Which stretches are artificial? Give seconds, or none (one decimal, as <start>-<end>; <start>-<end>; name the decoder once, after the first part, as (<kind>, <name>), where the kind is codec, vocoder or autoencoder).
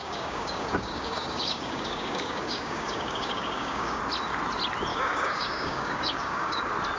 0.0-4.0 (codec, DAC); 4.9-6.6